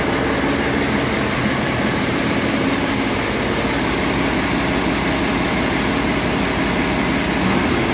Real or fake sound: real